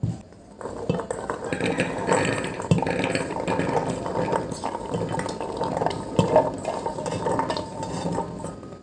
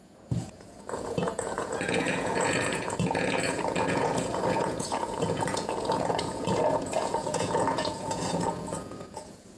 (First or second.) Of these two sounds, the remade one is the second